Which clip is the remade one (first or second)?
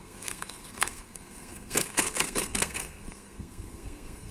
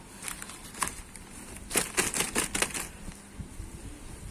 first